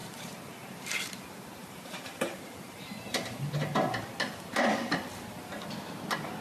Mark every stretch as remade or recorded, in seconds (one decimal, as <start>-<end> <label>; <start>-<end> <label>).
0.0-1.2 remade; 1.2-1.6 recorded; 1.6-3.5 remade; 3.5-6.4 recorded